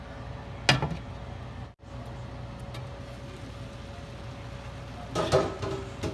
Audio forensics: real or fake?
real